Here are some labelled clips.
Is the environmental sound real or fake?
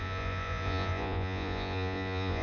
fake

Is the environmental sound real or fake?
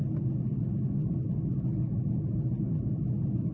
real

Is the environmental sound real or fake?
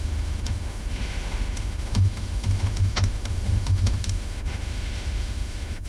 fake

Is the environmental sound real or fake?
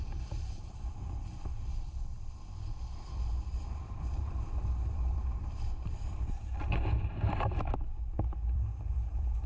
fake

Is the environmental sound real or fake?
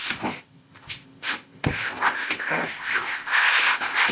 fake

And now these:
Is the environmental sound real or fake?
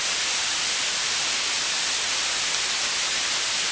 real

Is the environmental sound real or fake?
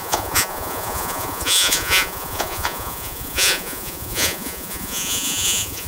fake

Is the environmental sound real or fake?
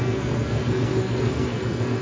fake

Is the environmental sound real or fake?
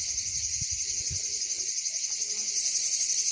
real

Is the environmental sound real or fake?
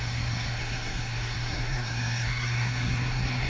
fake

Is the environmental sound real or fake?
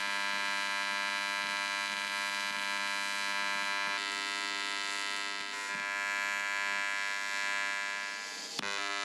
real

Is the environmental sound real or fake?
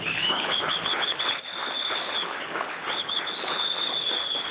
fake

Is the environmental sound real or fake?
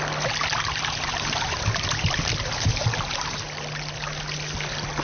real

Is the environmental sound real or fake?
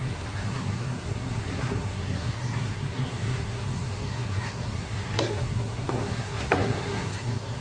fake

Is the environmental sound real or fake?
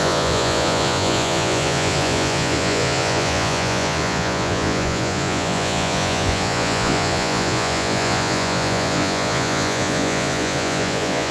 fake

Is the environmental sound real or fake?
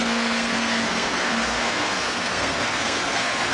fake